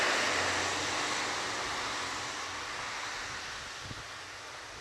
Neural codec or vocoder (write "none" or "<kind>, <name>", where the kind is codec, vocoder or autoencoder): none